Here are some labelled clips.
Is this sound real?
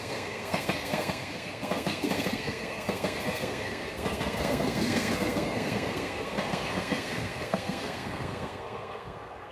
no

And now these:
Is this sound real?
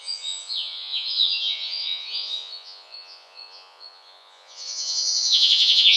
no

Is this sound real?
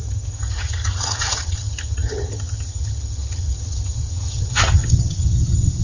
no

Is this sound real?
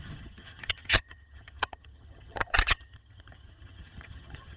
no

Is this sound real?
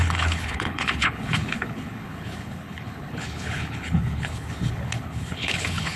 no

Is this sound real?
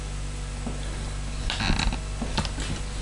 yes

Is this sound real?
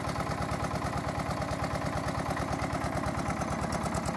yes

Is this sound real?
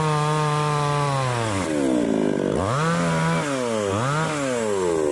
yes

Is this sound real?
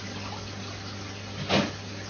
yes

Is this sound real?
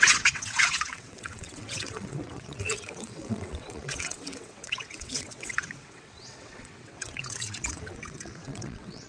no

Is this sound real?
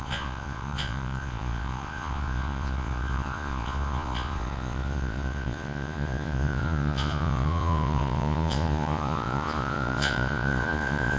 no